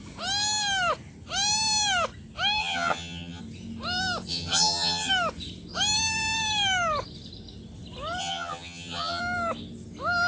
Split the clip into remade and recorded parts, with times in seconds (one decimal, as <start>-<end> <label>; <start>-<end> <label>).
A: 0.0-2.6 recorded; 2.6-3.4 remade; 3.4-4.3 recorded; 4.3-5.1 remade; 5.1-8.2 recorded; 8.2-9.2 remade; 9.2-10.3 recorded